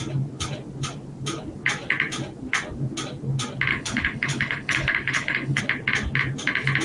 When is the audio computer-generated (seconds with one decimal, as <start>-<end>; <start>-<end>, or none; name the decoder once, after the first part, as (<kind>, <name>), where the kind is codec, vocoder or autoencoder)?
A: 3.7-5.6 (codec, HILCodec)